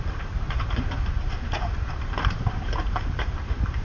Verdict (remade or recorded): remade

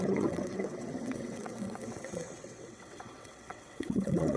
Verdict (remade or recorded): remade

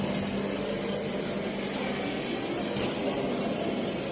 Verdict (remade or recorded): recorded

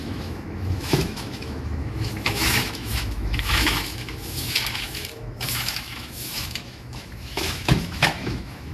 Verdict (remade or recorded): remade